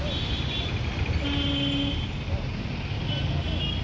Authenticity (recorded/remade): recorded